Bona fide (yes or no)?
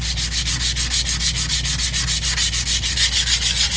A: yes